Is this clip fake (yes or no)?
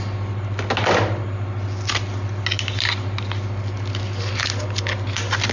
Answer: no